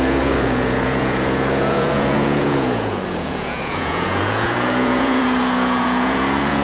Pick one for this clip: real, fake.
fake